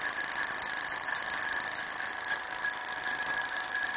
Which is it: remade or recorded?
recorded